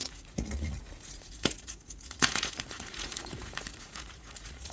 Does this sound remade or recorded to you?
remade